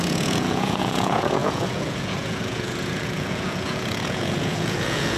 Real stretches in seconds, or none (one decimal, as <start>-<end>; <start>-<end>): none